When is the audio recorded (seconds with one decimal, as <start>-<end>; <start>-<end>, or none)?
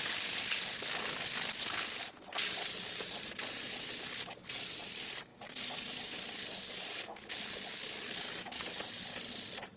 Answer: 0.0-9.8